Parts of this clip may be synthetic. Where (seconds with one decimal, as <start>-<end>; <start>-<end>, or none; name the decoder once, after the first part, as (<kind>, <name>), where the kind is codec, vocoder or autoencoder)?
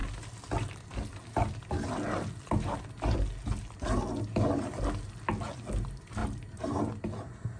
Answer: 6.2-6.8 (vocoder, BigVGAN v2)